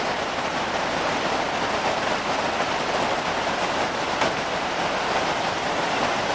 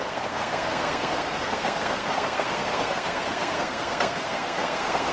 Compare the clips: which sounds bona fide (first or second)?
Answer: first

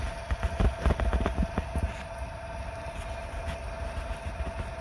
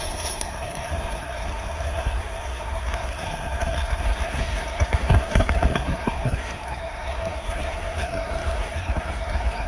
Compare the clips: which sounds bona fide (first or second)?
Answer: first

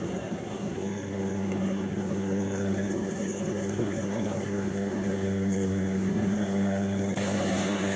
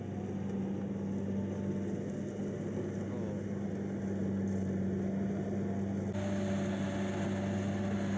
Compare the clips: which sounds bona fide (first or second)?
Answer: second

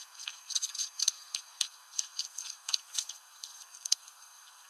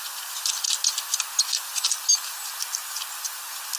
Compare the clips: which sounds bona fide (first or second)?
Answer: second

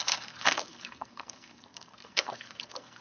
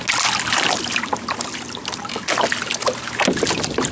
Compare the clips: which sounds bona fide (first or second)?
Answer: second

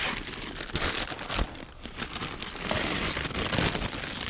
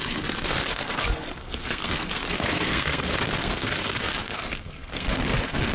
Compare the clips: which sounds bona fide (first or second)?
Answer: first